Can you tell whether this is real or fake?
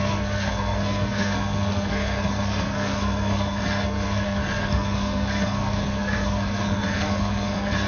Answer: fake